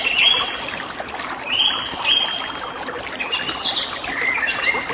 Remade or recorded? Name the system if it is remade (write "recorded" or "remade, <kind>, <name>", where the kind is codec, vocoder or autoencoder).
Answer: recorded